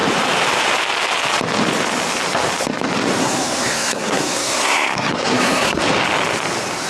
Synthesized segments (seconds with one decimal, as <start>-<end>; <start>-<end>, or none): 3.2-5.8